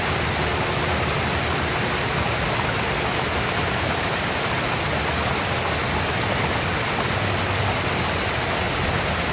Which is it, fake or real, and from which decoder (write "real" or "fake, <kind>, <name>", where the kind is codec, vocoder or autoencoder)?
real